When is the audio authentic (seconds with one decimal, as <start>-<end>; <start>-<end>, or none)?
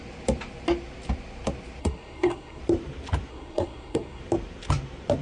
0.0-1.8; 2.6-3.3; 4.2-5.2